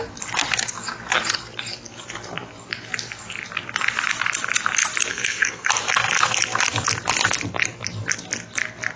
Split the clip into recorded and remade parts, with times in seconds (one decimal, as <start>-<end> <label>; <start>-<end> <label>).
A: 0.0-5.1 recorded; 5.1-5.7 remade; 5.7-9.0 recorded